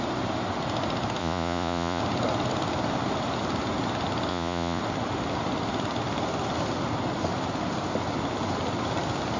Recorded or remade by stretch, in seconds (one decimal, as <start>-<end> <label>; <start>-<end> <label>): 0.0-1.2 recorded; 1.2-2.0 remade; 2.0-4.3 recorded; 4.3-4.8 remade; 4.8-9.4 recorded